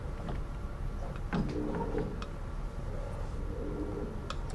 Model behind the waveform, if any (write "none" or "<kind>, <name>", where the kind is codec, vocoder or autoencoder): none